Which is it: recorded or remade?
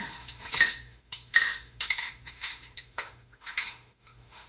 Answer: remade